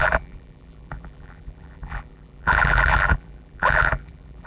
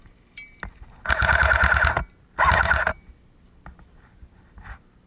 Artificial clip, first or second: first